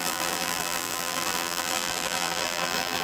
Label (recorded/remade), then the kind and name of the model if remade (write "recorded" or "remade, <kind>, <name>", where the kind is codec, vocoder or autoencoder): remade, vocoder, BigVGAN v2